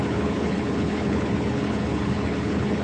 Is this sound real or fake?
fake